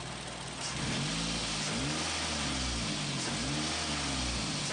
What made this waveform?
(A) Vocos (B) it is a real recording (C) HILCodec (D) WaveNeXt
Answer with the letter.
B